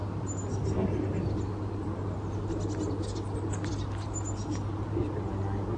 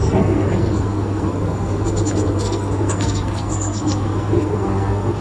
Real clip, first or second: first